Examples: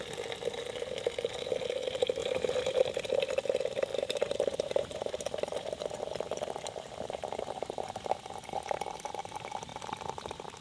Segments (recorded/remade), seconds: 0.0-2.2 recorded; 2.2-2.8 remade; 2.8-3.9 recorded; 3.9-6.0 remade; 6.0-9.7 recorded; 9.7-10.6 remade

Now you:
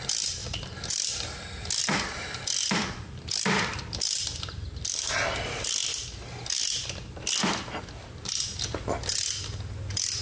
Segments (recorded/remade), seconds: 0.0-5.8 remade; 5.8-10.2 recorded

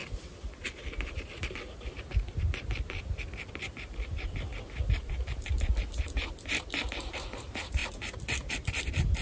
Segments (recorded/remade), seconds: 0.0-9.2 recorded

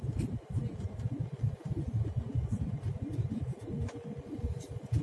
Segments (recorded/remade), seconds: 0.0-5.0 recorded

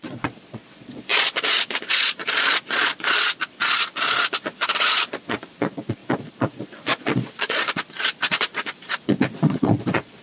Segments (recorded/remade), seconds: 0.0-10.2 remade

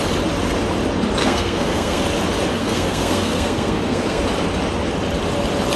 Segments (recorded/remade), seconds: 0.0-1.2 recorded; 1.2-2.0 remade; 2.0-2.5 recorded; 2.5-4.2 remade; 4.2-5.8 recorded

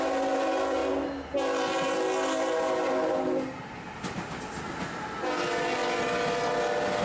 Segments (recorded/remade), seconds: 0.0-7.0 recorded

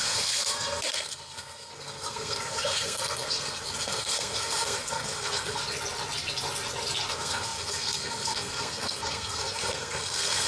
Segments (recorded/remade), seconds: 0.0-5.6 remade; 5.6-7.1 recorded; 7.1-10.5 remade